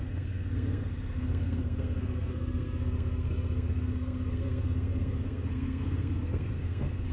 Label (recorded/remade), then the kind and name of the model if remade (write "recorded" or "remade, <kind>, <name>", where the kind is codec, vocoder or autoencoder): remade, codec, SNAC